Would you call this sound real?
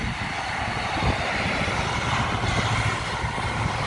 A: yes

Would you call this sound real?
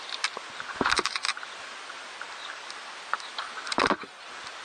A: yes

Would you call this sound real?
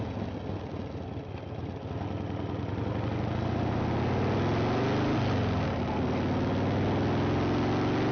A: yes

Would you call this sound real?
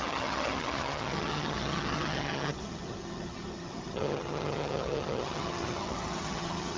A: no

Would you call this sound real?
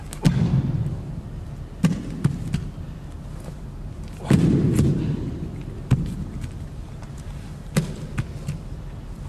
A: yes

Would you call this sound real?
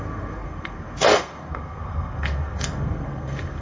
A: no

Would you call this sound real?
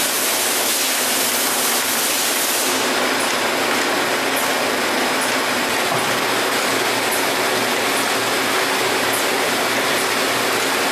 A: yes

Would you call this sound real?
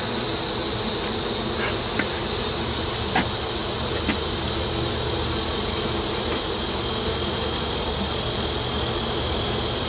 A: yes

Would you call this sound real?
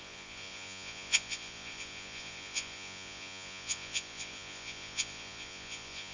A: no